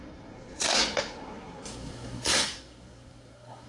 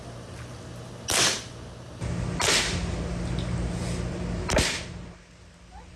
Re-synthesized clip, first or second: first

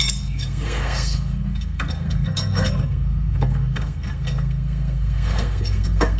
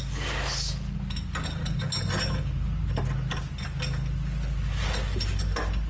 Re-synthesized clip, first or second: first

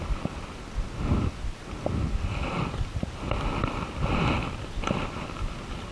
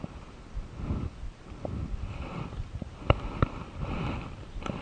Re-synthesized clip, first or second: second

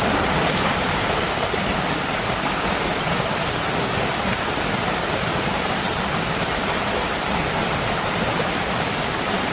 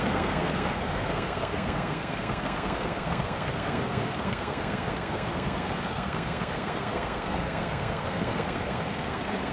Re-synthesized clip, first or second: second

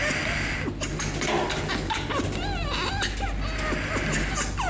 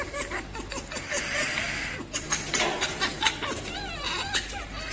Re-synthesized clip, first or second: second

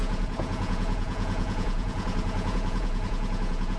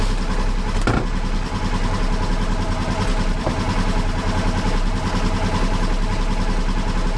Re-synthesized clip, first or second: first